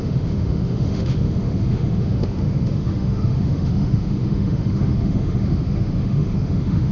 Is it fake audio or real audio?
fake